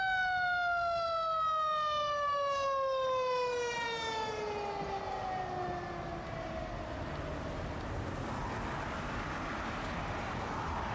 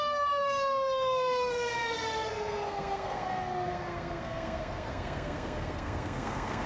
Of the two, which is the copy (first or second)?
second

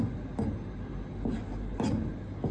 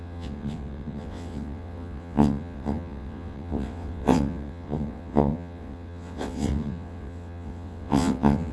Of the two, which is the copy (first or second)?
second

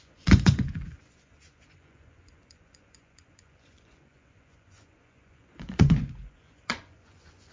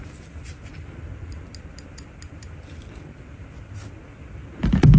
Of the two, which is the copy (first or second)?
first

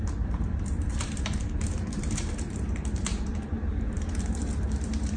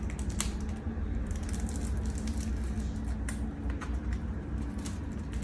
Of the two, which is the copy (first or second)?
first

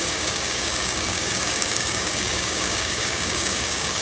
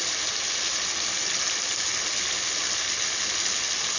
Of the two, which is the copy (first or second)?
first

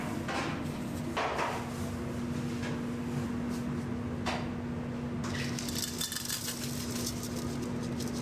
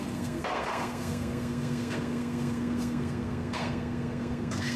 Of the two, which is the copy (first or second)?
second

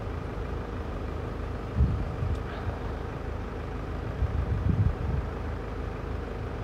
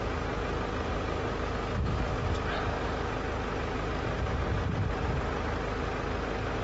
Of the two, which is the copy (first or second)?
first